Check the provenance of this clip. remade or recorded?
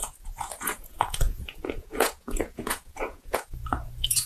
remade